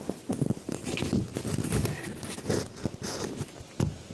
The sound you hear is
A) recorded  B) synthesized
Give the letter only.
A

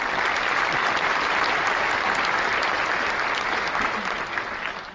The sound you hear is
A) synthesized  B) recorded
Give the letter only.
B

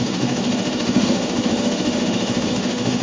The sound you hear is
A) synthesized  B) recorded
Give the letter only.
A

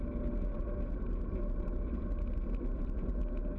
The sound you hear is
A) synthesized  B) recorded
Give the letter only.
B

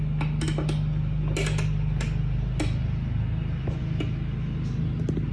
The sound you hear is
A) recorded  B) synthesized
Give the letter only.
A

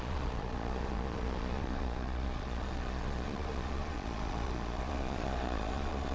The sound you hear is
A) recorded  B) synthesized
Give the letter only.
B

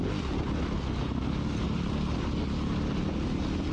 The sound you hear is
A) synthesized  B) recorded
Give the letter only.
B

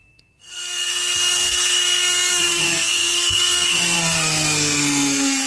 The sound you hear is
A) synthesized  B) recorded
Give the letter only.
A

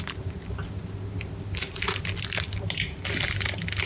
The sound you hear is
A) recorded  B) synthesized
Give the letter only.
A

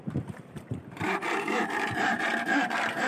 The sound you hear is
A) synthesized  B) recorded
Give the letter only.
A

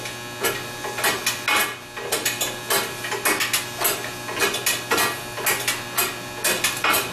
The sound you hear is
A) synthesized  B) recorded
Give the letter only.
B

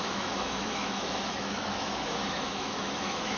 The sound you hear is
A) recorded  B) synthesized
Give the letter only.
B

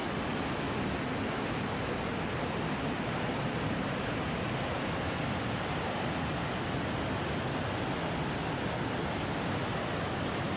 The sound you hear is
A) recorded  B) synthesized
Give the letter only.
A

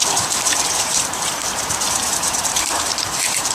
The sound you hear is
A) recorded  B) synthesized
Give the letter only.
B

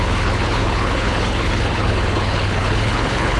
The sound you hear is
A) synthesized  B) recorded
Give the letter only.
A